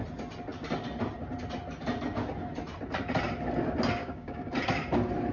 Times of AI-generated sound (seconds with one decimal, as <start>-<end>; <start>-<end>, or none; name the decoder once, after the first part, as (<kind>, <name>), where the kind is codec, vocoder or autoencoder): 4.0-4.5 (codec, DAC)